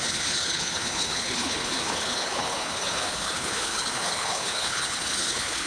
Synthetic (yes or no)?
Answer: yes